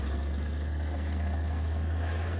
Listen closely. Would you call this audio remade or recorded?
remade